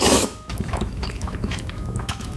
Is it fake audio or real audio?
fake